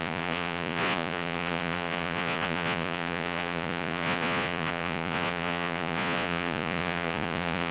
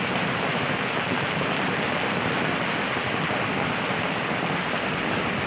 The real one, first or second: second